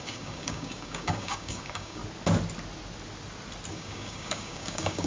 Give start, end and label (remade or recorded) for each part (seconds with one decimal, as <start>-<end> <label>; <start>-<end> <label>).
0.0-2.0 remade; 2.0-3.7 recorded; 3.7-5.1 remade

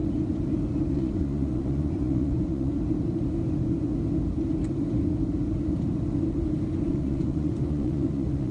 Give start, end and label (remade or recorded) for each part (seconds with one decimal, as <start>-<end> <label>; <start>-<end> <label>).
0.0-0.9 recorded; 0.9-2.7 remade; 2.7-6.9 recorded; 6.9-8.5 remade

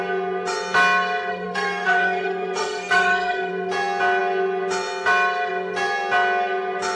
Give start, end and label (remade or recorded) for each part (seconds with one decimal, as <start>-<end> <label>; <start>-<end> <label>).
0.0-1.3 recorded; 1.3-3.5 remade; 3.5-7.0 recorded

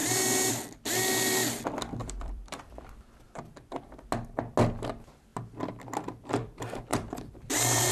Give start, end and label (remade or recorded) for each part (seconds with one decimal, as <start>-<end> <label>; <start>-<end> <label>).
0.0-2.0 recorded; 2.0-3.8 remade; 3.8-6.9 recorded; 6.9-7.9 remade